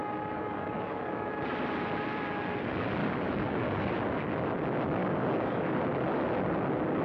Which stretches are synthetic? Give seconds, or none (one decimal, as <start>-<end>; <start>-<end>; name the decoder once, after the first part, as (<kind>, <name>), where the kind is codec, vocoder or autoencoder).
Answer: 0.0-1.3 (codec, DAC); 3.0-3.9; 5.0-5.8